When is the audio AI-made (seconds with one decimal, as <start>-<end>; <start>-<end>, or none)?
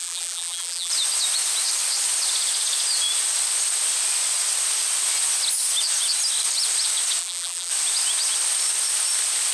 0.0-0.9; 7.2-7.7